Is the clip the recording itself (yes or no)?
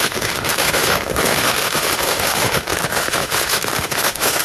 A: no